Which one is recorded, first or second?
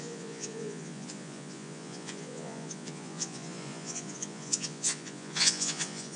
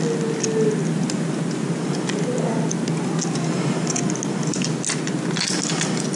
second